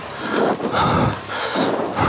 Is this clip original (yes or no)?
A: yes